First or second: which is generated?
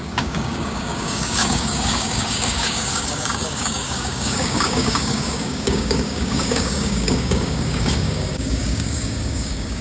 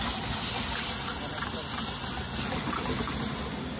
first